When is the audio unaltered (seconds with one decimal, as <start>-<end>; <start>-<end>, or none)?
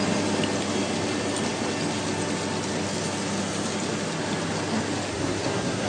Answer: 0.0-5.1